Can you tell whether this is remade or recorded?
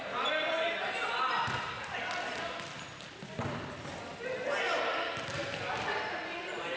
recorded